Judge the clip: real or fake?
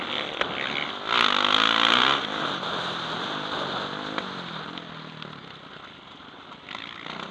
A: real